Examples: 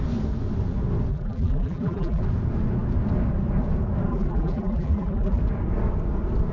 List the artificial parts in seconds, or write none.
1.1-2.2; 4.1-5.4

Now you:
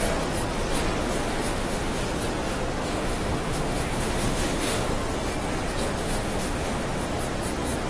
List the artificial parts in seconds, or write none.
1.0-2.0; 2.9-4.9; 6.0-7.0